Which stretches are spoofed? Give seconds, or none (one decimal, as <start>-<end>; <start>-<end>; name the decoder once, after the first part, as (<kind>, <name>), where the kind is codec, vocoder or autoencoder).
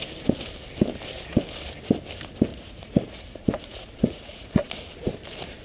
2.5-4.7 (vocoder, Vocos)